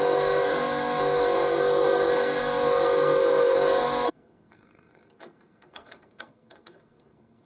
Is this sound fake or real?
fake